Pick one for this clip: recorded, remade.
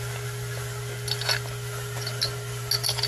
recorded